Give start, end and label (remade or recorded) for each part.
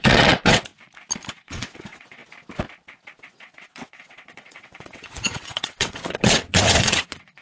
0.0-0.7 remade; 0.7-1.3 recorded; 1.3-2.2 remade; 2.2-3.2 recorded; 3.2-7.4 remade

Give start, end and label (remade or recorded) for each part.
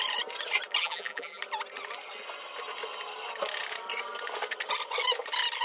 0.0-0.8 recorded; 0.8-1.4 remade; 1.4-5.6 recorded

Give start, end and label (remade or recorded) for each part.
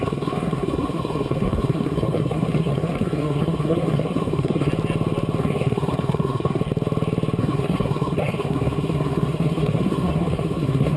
0.0-4.7 remade; 4.7-5.4 recorded; 5.4-6.6 remade; 6.6-7.4 recorded; 7.4-11.0 remade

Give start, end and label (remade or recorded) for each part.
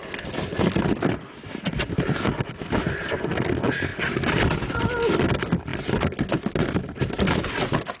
0.0-8.0 recorded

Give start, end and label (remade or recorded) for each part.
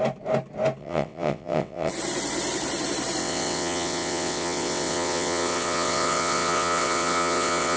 0.0-0.8 recorded; 0.8-1.9 remade; 1.9-3.2 recorded; 3.2-7.8 remade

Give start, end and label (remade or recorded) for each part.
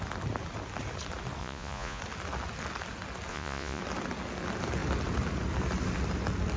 0.0-1.4 recorded; 1.4-2.0 remade; 2.0-3.3 recorded; 3.3-3.8 remade; 3.8-6.6 recorded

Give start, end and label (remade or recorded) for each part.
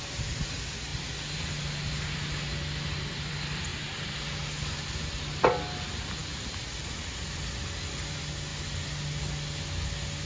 0.0-10.3 recorded